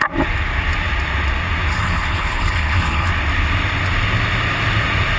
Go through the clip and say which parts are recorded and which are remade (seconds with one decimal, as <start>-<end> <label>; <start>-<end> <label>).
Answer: 0.0-1.7 recorded; 1.7-3.1 remade; 3.1-5.2 recorded